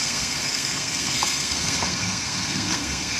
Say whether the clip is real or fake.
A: fake